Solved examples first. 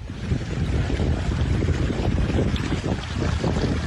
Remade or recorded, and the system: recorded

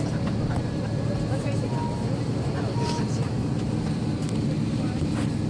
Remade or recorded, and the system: recorded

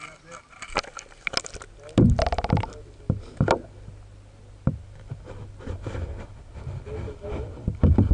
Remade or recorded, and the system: recorded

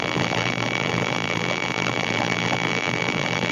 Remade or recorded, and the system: remade, vocoder, BigVGAN v2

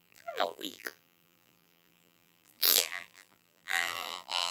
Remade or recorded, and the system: remade, vocoder, BigVGAN v2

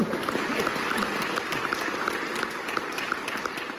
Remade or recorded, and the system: remade, vocoder, BigVGAN v2